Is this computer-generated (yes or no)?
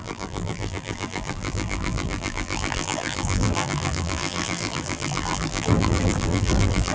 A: yes